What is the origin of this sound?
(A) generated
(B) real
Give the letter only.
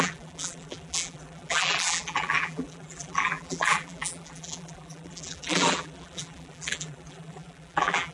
A